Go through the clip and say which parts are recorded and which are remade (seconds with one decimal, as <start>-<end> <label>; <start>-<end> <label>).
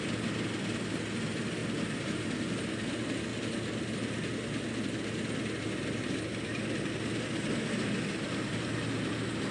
0.0-1.6 recorded; 1.6-2.4 remade; 2.4-9.5 recorded